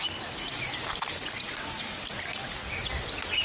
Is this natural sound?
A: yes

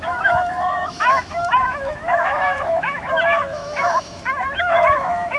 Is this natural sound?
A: no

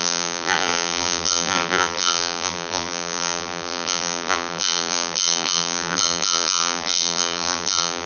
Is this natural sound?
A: no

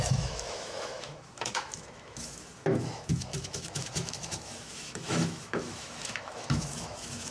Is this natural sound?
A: no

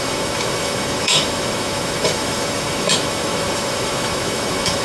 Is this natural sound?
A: no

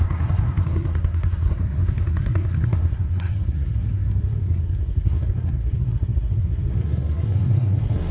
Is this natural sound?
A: no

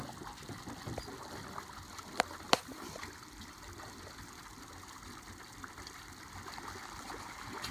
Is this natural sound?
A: yes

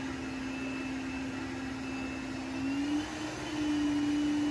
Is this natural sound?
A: yes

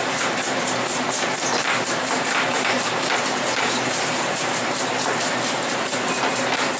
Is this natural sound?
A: no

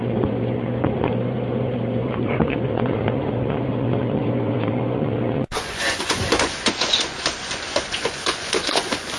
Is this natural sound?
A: no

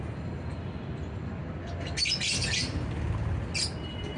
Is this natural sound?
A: yes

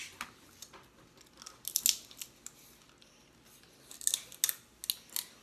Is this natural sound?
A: yes